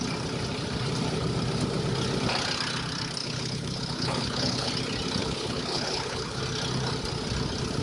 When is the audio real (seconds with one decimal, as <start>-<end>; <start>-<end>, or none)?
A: 0.0-3.2; 4.7-5.2; 6.4-7.8